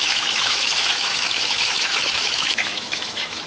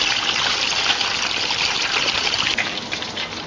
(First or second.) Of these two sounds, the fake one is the first